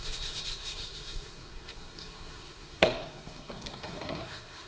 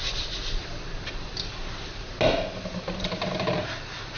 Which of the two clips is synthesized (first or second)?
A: first